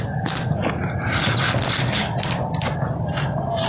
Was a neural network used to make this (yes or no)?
no